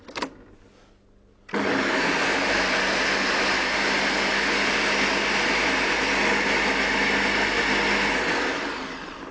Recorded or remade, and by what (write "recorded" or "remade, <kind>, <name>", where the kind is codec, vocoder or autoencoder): recorded